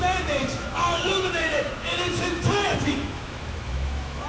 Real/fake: fake